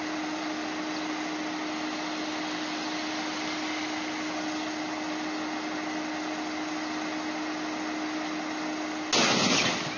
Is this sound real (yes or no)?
yes